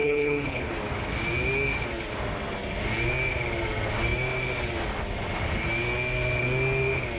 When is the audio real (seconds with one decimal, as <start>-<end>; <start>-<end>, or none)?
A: 0.7-7.2